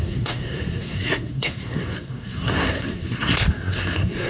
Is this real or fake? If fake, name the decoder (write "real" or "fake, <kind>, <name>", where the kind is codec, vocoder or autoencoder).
fake, codec, SNAC